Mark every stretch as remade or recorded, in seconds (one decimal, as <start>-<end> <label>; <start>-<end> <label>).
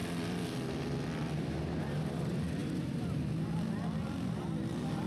0.0-5.1 recorded